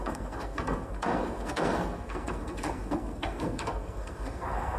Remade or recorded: remade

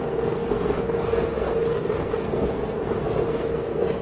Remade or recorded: remade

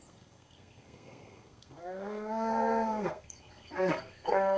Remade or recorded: remade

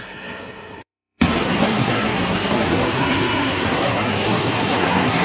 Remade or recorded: remade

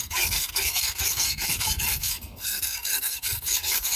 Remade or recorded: remade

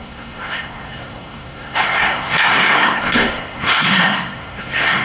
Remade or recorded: remade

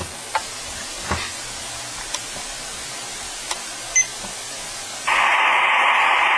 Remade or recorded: recorded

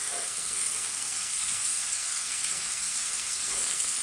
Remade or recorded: remade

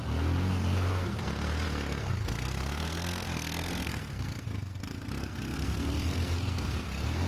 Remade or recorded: remade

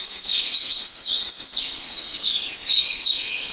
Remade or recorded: remade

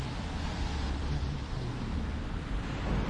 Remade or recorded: recorded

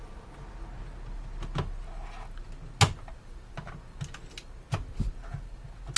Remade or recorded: recorded